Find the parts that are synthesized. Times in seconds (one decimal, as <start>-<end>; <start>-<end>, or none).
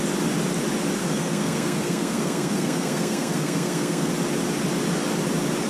1.0-4.1